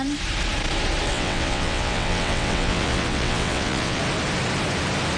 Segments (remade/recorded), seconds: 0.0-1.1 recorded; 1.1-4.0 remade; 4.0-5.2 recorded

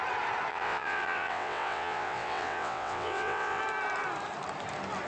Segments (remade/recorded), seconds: 0.0-0.5 recorded; 0.5-3.6 remade; 3.6-5.1 recorded

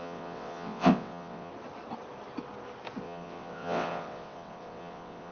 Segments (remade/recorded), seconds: 0.0-1.5 remade; 1.5-3.0 recorded; 3.0-5.3 remade

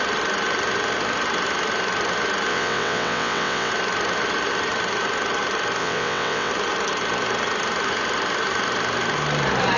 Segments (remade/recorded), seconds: 0.0-2.5 recorded; 2.5-3.7 remade; 3.7-5.8 recorded; 5.8-6.5 remade; 6.5-9.8 recorded

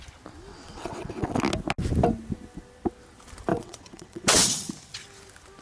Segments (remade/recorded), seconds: 0.0-0.5 recorded; 0.5-1.4 remade; 1.4-3.5 recorded; 3.5-4.7 remade; 4.7-5.6 recorded